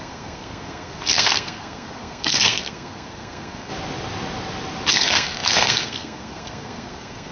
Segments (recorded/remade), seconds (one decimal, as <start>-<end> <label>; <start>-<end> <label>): 0.0-3.7 remade; 3.7-4.9 recorded; 4.9-7.3 remade

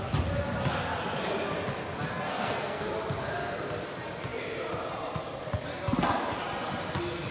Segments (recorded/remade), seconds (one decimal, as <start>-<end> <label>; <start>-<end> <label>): 0.0-2.3 recorded; 2.3-2.9 remade; 2.9-7.3 recorded

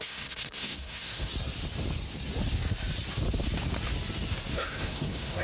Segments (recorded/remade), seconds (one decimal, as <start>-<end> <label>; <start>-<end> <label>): 0.0-1.3 remade; 1.3-4.5 recorded; 4.5-5.4 remade

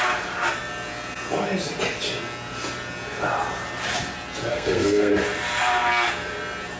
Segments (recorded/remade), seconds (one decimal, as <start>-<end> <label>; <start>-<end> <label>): 0.0-4.5 recorded; 4.5-5.1 remade; 5.1-6.8 recorded